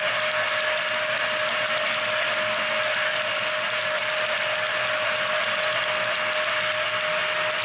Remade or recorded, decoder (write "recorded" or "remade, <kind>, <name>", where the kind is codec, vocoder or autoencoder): recorded